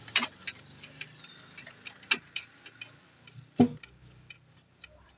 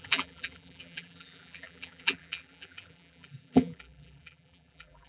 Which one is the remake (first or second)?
second